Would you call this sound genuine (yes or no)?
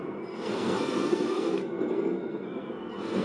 no